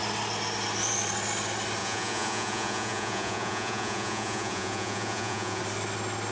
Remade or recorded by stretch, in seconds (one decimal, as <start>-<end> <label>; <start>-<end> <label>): 0.0-1.8 recorded; 1.8-5.6 remade; 5.6-6.3 recorded